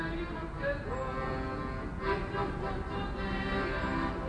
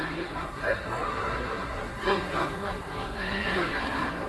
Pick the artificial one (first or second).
second